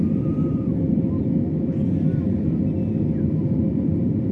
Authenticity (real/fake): real